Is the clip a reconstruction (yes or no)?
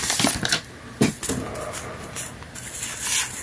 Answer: no